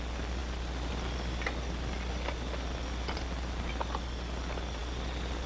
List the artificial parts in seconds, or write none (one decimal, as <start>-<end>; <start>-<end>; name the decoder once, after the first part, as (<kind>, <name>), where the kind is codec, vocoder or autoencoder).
none